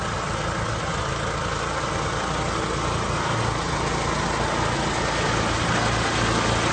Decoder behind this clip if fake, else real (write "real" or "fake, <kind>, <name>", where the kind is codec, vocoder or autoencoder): real